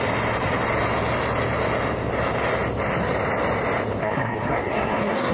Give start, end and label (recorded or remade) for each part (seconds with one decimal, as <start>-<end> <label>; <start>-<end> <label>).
0.0-4.0 recorded; 4.0-5.3 remade